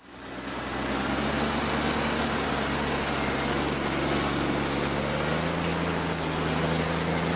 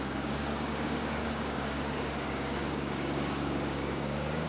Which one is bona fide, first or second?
first